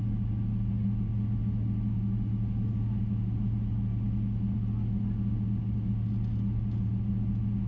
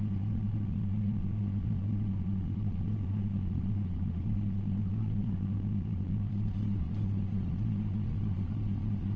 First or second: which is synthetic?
second